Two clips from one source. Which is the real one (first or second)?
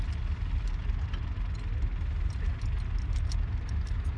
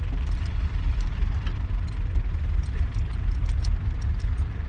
first